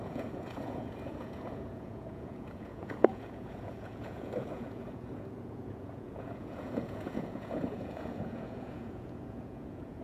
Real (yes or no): no